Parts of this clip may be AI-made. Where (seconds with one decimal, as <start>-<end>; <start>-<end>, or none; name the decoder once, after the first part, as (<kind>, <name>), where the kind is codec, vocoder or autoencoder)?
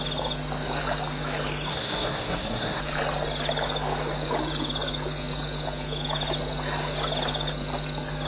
1.7-2.8 (codec, SNAC)